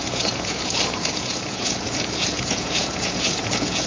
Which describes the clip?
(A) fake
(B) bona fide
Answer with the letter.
A